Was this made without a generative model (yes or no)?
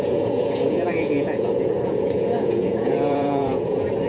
no